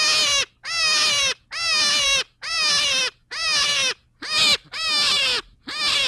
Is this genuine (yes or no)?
yes